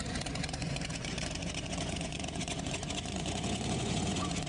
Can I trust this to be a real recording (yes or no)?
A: no